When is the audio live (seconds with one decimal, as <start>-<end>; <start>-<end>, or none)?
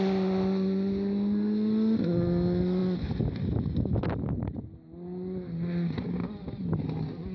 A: 0.0-7.3